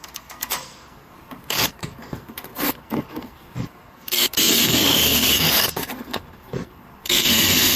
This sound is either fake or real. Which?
fake